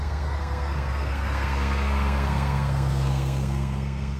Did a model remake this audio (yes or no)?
yes